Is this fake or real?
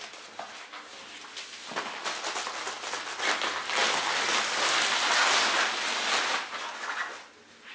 real